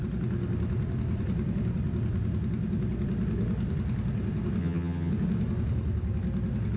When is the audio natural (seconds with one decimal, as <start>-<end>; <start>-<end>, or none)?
0.0-4.6; 5.1-6.8